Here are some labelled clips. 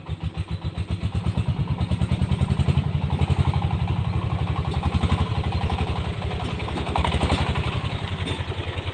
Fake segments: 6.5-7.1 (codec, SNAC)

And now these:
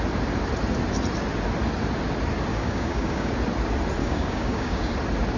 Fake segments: 2.5-3.3 (codec, DAC); 4.0-4.9

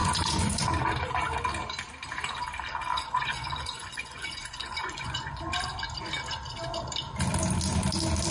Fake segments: 0.0-0.6 (vocoder, Vocos); 2.9-5.4

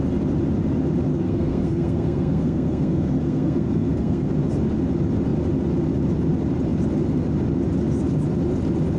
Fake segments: 1.1-4.3 (codec, SNAC)

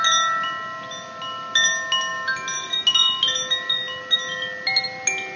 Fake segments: none

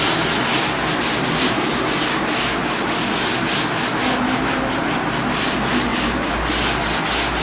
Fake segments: none

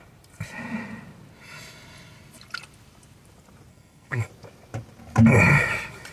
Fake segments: 3.7-4.3 (codec, SNAC)

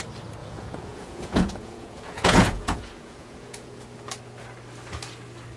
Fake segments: 0.4-3.8 (vocoder, Vocos)